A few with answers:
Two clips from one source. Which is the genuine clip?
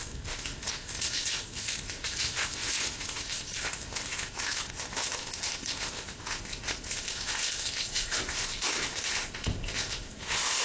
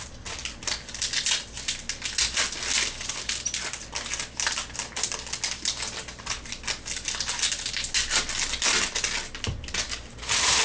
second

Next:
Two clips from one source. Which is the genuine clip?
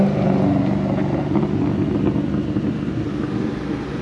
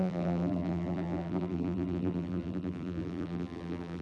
first